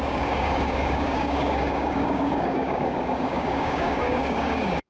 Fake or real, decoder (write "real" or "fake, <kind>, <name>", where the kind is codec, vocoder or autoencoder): fake, codec, DAC